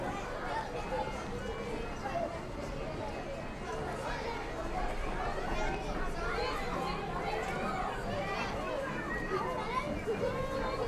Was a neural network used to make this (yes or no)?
no